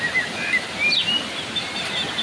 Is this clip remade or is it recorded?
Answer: recorded